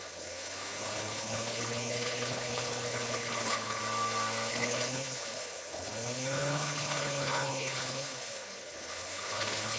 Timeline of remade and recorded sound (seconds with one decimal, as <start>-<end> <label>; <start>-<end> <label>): 0.0-3.8 remade; 3.8-4.5 recorded; 4.5-9.8 remade